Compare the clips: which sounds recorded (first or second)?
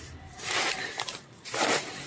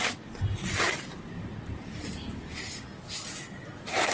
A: second